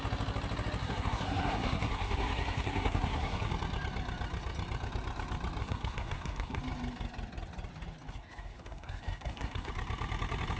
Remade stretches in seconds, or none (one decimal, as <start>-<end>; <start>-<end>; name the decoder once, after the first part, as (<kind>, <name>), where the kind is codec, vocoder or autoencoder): 0.8-3.5 (codec, SNAC); 5.6-6.6; 8.2-9.7